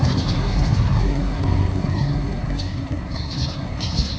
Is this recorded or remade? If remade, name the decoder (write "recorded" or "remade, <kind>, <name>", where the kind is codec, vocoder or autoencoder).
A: remade, codec, SNAC